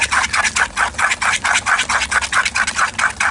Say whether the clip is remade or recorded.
recorded